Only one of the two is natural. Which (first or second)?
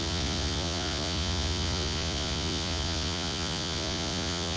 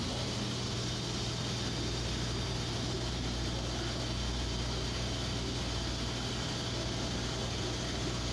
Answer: second